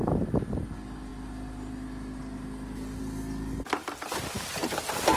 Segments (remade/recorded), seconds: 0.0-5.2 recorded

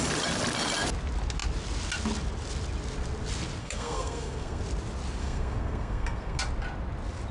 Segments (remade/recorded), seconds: 0.0-3.6 recorded; 3.6-4.6 remade; 4.6-5.2 recorded; 5.2-6.4 remade; 6.4-7.3 recorded

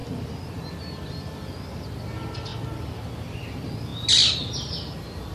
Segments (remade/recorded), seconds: 0.0-5.3 recorded